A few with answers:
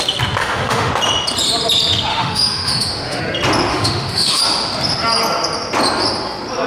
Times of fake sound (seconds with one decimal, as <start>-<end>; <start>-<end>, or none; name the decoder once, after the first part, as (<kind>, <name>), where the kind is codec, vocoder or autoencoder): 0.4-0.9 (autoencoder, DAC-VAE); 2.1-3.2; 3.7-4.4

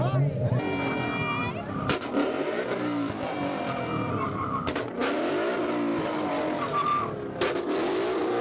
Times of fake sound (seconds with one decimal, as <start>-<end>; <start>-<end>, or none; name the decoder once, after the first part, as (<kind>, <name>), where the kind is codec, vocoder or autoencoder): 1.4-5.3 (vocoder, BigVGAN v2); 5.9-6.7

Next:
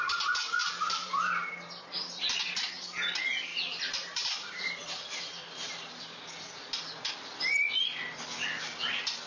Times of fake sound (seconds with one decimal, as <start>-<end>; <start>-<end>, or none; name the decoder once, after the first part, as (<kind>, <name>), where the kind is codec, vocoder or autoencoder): 0.6-2.2 (vocoder, BigVGAN v2); 3.5-6.0

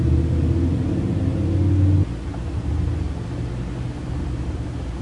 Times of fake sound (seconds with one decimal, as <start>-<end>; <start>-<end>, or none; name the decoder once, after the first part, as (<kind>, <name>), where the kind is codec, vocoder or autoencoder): none

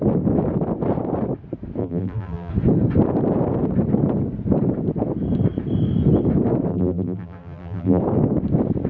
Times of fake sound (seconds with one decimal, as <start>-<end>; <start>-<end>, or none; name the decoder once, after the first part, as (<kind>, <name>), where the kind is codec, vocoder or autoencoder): 1.8-2.5 (vocoder, BigVGAN v2); 6.7-8.0

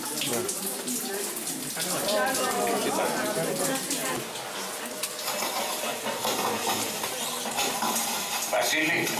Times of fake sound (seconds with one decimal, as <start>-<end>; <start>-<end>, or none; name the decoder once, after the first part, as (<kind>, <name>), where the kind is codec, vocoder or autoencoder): none